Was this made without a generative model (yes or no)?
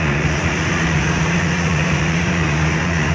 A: no